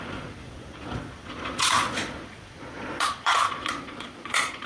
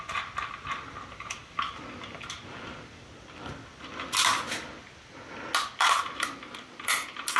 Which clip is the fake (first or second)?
first